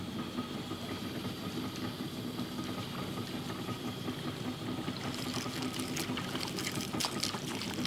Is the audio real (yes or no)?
yes